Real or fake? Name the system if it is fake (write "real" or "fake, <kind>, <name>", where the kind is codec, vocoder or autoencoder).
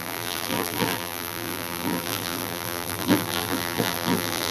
fake, vocoder, BigVGAN v2